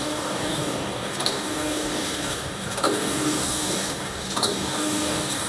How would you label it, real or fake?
fake